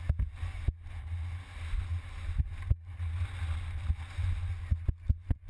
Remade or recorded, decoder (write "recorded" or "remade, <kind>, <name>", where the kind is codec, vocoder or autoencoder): recorded